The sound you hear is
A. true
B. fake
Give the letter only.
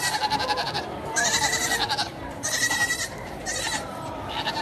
B